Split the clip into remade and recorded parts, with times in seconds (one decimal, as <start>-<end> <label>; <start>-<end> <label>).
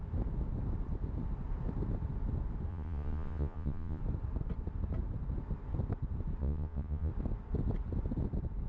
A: 0.0-2.7 recorded; 2.7-4.0 remade; 4.0-6.4 recorded; 6.4-7.1 remade; 7.1-8.7 recorded